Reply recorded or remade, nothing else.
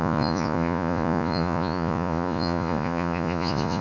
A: remade